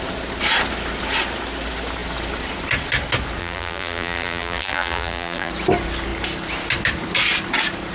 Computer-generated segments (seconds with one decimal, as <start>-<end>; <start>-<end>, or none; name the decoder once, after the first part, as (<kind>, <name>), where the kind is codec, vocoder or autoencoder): 3.4-5.5 (vocoder, BigVGAN v2)